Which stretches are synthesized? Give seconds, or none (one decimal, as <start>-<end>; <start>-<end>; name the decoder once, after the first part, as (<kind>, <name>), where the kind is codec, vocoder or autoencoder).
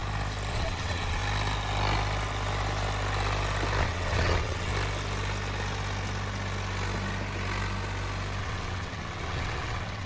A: 0.5-1.2 (vocoder, WaveNeXt); 3.8-4.7; 8.4-10.1